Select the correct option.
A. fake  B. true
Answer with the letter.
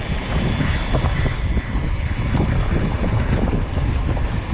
B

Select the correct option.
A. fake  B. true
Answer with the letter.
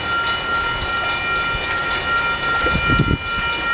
B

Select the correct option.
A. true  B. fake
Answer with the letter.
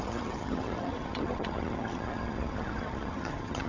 B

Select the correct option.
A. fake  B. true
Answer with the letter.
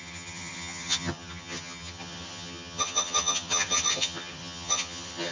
A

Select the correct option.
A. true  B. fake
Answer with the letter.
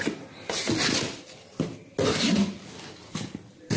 A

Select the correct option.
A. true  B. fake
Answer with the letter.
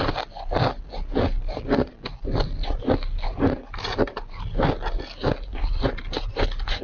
A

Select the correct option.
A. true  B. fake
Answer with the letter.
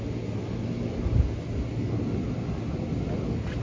A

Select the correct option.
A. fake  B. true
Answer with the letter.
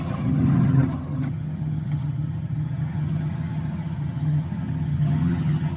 A